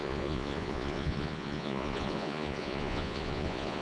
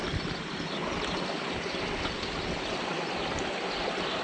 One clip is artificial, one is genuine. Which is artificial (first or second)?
first